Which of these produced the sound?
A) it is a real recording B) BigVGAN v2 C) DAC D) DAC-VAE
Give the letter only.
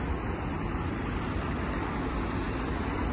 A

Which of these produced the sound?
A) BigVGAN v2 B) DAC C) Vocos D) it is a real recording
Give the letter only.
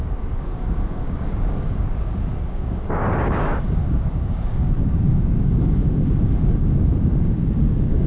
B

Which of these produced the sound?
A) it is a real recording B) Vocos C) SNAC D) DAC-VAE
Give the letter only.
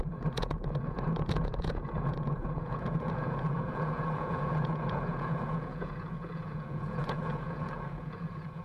B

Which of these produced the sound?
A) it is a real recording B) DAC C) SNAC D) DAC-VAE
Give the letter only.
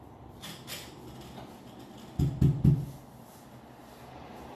A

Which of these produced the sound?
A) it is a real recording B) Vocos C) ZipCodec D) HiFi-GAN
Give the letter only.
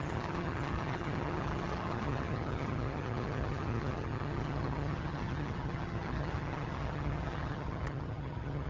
D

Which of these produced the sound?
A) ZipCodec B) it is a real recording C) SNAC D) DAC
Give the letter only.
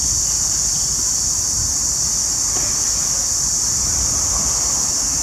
B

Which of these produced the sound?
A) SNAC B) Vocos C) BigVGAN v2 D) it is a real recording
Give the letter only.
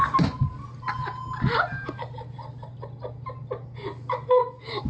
D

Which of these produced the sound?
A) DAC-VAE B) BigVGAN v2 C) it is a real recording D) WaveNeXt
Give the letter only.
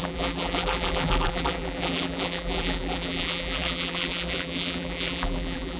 B